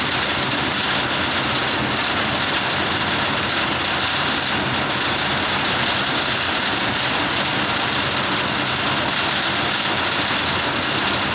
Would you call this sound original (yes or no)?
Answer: yes